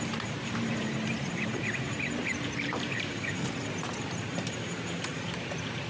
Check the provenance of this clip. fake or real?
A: fake